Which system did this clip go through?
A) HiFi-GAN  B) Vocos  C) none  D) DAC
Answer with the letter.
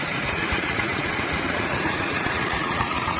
B